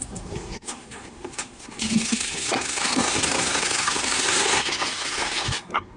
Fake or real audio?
fake